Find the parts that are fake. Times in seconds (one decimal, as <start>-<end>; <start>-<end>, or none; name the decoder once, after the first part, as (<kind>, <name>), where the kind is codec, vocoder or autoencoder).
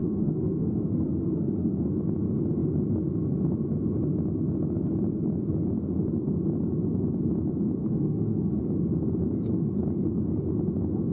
0.0-2.0 (autoencoder, DAC-VAE); 7.8-8.6